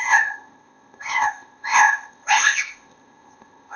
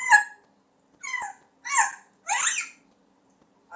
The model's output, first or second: first